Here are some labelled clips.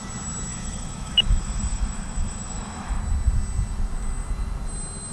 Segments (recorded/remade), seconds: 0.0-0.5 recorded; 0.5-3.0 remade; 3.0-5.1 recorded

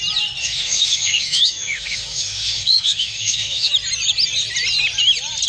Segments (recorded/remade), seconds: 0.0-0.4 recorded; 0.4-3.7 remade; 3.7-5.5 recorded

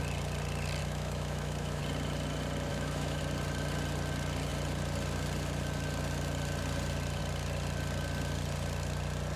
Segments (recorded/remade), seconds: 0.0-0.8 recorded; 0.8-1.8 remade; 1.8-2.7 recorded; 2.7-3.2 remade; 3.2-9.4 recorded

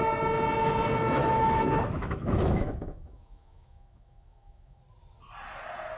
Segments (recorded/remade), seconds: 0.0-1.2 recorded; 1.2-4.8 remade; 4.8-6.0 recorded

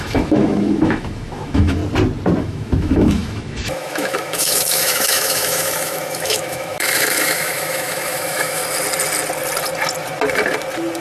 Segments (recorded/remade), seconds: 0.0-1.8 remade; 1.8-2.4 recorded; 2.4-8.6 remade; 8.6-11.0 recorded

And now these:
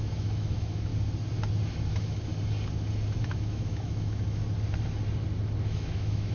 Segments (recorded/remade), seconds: 0.0-0.9 remade; 0.9-1.9 recorded; 1.9-2.3 remade; 2.3-3.2 recorded; 3.2-4.4 remade; 4.4-5.6 recorded; 5.6-6.3 remade

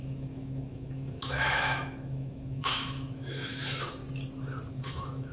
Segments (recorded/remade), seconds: 0.0-4.0 remade; 4.0-4.7 recorded; 4.7-5.3 remade

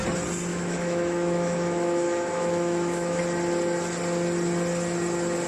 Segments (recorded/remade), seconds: 0.0-0.5 recorded; 0.5-3.2 remade; 3.2-5.5 recorded